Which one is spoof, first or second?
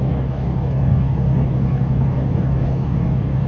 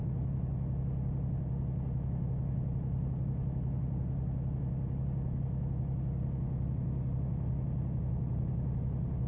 first